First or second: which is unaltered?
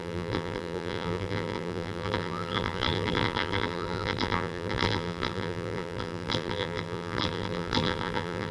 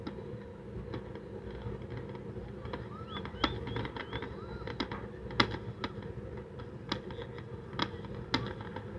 second